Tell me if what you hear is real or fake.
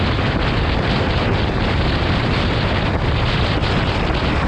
real